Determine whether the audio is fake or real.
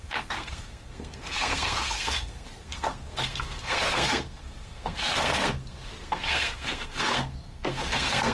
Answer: fake